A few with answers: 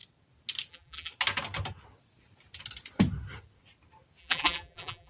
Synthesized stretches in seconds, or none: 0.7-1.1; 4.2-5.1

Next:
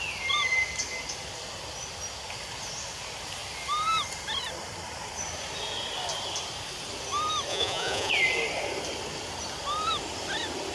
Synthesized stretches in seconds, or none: 7.5-8.1

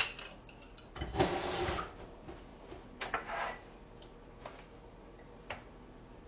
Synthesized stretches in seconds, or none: none

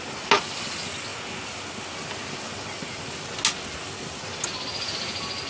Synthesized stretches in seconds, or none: none

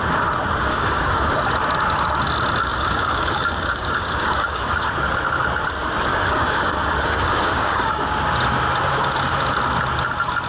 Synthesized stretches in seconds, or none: 0.7-1.3; 2.7-4.9; 6.1-8.1

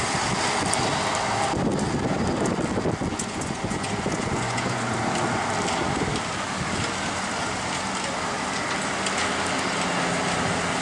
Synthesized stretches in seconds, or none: 3.1-4.9

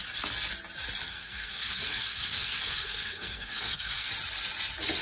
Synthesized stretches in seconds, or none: 1.1-4.1

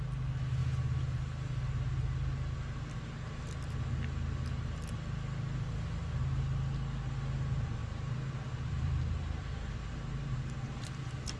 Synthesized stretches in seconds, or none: 7.8-11.4